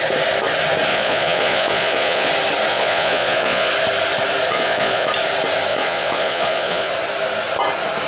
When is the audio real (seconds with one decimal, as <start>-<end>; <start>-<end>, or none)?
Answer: 0.0-0.9; 2.3-2.7; 3.7-4.5; 5.1-5.7; 6.9-8.1